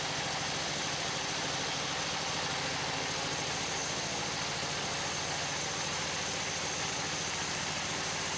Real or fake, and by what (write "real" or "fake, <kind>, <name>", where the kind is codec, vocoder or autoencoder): real